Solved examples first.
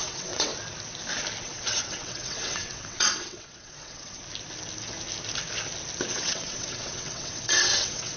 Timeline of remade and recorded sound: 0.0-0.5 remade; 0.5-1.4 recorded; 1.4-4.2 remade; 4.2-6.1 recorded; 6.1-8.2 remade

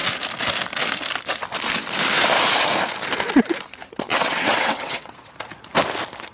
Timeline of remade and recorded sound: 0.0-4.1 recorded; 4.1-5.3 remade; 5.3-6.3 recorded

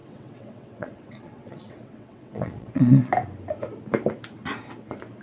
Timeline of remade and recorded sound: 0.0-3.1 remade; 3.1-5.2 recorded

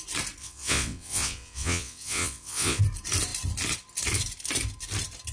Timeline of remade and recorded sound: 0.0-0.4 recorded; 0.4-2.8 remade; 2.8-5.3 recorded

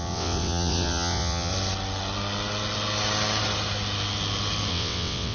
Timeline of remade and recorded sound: 0.0-1.5 remade; 1.5-4.7 recorded; 4.7-5.3 remade

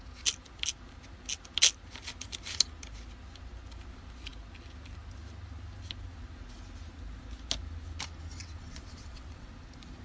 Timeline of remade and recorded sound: 0.0-8.4 recorded; 8.4-9.5 remade; 9.5-10.0 recorded

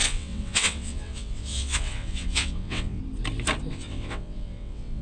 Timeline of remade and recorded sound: 0.0-3.0 remade; 3.0-3.7 recorded; 3.7-5.0 remade